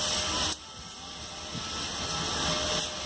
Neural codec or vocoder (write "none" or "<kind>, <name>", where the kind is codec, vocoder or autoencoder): none